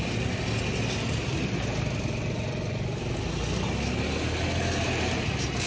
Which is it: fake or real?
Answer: real